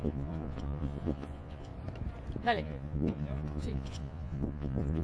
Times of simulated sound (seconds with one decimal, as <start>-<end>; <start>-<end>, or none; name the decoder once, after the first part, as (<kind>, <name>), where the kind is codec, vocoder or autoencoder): 0.0-1.7 (vocoder, Vocos); 2.4-5.0